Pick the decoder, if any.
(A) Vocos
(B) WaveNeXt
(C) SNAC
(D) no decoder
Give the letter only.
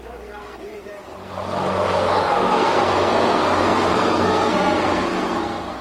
C